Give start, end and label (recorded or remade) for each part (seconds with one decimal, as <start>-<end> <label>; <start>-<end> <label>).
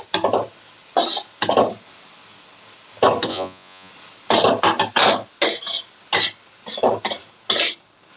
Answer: 0.0-3.3 recorded; 3.3-3.9 remade; 3.9-8.2 recorded